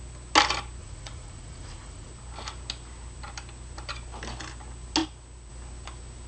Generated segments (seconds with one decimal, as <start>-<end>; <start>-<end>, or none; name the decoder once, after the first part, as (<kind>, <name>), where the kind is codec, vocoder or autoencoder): 0.8-2.1 (vocoder, Vocos)